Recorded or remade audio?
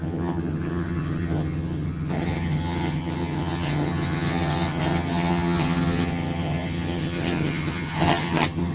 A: remade